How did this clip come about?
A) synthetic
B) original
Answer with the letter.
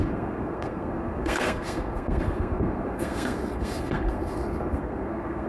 A